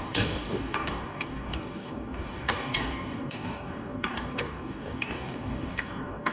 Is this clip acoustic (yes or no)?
no